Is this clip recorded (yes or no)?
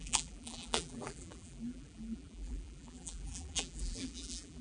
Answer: no